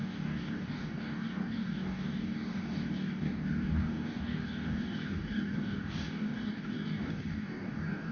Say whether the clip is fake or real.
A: fake